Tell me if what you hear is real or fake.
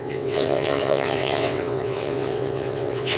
fake